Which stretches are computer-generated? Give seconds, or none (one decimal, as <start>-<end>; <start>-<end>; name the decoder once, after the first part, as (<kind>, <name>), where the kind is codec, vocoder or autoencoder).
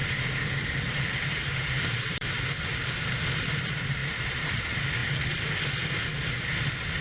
0.0-2.4 (vocoder, BigVGAN v2); 4.0-4.5